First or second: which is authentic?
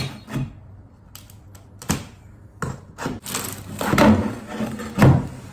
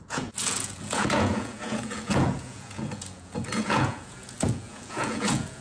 first